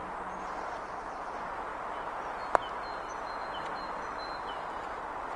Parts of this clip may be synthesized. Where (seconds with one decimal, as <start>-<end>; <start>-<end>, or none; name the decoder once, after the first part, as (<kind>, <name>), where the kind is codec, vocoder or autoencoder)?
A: 0.6-1.7 (vocoder, BigVGAN v2); 4.9-5.4